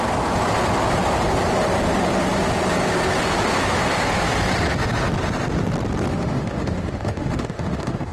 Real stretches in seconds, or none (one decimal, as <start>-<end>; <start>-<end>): 0.0-6.1